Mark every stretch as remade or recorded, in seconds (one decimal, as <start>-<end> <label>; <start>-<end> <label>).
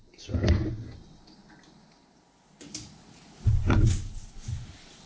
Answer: 0.0-5.1 recorded